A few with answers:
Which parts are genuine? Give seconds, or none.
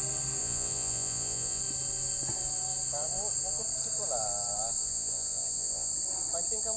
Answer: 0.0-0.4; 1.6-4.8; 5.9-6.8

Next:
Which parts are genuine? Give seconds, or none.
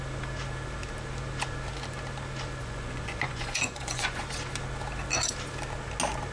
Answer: 0.0-2.6; 4.2-6.3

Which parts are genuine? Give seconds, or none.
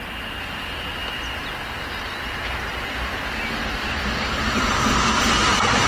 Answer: 0.0-5.9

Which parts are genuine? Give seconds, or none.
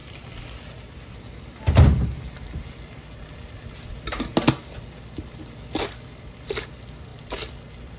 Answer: 0.0-8.0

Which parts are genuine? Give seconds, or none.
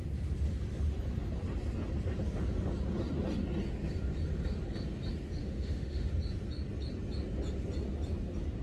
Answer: 0.0-5.4; 6.1-8.6